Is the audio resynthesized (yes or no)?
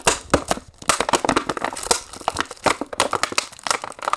no